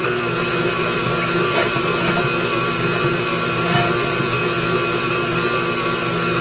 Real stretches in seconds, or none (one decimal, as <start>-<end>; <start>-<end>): 0.0-6.4